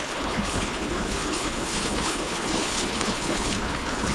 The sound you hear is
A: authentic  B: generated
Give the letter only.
B